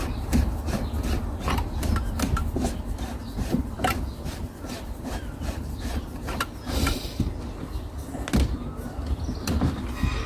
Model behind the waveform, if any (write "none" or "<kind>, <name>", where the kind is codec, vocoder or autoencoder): vocoder, BigVGAN v2